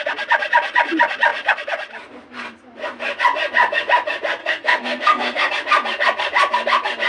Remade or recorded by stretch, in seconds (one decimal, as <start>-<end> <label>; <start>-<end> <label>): 0.0-4.4 recorded; 4.4-5.5 remade; 5.5-7.1 recorded